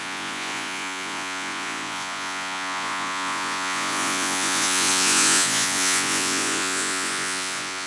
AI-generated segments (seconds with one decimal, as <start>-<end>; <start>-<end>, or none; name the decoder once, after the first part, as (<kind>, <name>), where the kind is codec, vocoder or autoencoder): 0.0-7.9 (vocoder, Vocos)